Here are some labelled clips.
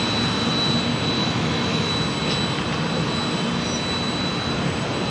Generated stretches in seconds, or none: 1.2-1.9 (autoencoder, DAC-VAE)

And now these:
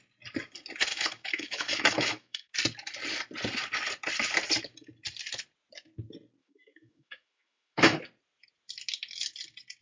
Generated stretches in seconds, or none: 0.9-2.5 (autoencoder, DAC-VAE); 6.4-8.0

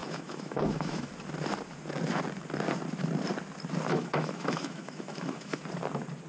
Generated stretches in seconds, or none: 0.0-1.1 (autoencoder, DAC-VAE); 3.9-5.6

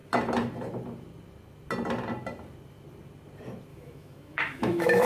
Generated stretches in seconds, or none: 3.7-5.1 (autoencoder, DAC-VAE)